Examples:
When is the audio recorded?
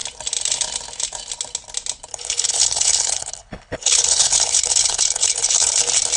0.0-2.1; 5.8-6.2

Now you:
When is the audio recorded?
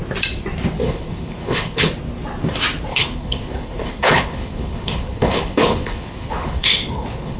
0.0-0.8; 1.9-2.9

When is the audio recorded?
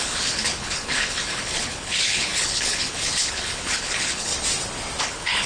4.3-5.0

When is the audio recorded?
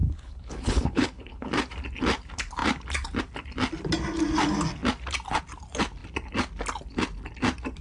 1.5-7.8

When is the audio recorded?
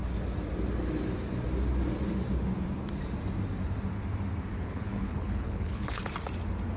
0.0-4.5; 6.0-6.8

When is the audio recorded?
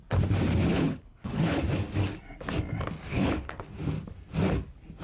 0.0-0.7; 1.6-3.1; 3.7-5.0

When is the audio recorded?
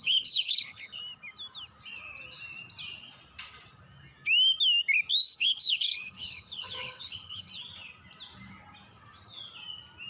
1.0-5.2; 7.5-10.1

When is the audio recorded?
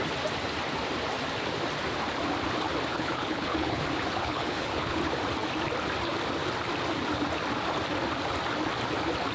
0.0-2.9; 3.8-4.2; 5.0-9.3